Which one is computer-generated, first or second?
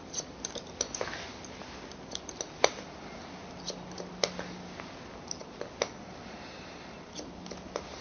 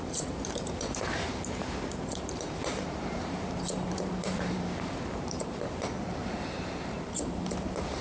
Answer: second